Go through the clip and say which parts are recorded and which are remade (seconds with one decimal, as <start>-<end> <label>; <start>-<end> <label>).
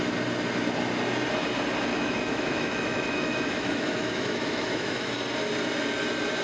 0.0-1.9 recorded; 1.9-5.1 remade; 5.1-6.4 recorded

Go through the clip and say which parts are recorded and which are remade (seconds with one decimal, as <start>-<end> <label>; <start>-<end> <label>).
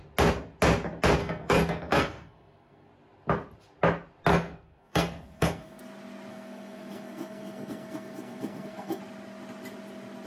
0.0-1.2 recorded; 1.2-2.9 remade; 2.9-4.3 recorded; 4.3-5.8 remade; 5.8-6.3 recorded; 6.3-9.0 remade; 9.0-10.3 recorded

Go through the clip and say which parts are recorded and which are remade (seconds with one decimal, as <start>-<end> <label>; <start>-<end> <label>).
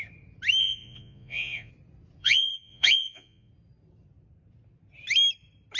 0.0-0.6 recorded; 0.6-1.7 remade; 1.7-2.2 recorded; 2.2-3.5 remade; 3.5-5.8 recorded